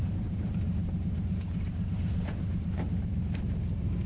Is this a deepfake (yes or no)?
yes